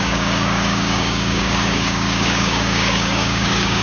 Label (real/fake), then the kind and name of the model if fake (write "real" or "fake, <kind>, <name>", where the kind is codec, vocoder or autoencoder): fake, codec, DAC